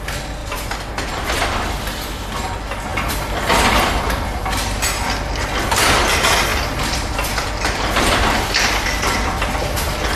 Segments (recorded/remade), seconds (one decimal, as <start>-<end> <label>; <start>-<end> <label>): 0.0-0.4 recorded; 0.4-1.3 remade; 1.3-6.5 recorded; 6.5-9.5 remade; 9.5-10.2 recorded